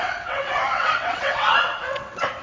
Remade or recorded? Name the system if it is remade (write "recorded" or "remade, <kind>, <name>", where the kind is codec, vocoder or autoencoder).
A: remade, vocoder, WaveNeXt